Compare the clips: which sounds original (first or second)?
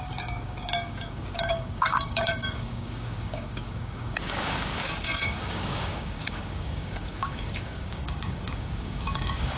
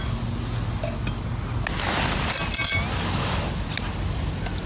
second